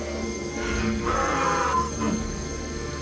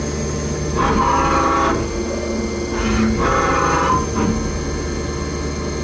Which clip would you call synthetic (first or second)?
first